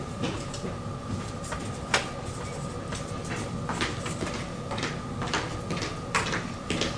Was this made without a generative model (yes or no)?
yes